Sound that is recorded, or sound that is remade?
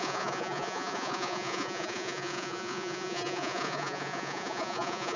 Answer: remade